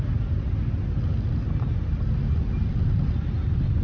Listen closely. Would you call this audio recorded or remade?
recorded